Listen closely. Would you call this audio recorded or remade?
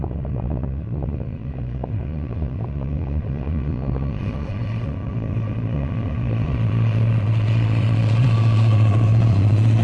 remade